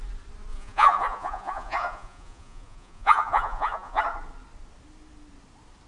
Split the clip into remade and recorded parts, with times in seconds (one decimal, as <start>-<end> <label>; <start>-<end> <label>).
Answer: 0.0-0.5 recorded; 0.5-4.0 remade; 4.0-5.9 recorded